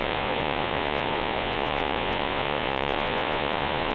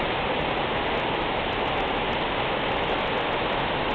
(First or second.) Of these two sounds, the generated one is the first